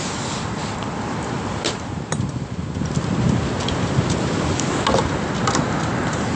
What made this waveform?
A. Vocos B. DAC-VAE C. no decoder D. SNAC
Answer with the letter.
C